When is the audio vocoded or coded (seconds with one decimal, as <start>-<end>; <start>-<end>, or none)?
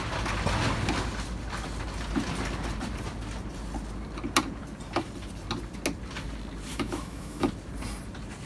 6.7-7.5